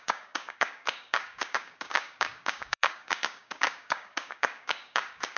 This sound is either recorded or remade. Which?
remade